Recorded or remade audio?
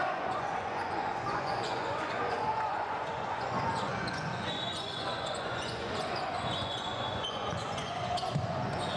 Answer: remade